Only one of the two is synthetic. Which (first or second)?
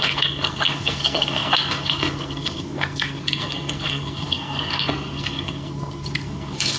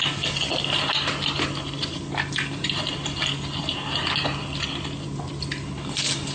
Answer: first